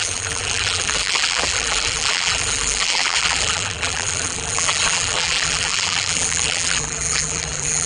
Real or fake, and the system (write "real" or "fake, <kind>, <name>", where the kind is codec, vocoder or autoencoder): fake, vocoder, BigVGAN v2